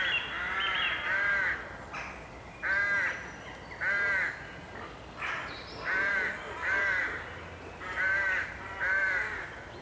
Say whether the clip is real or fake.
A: fake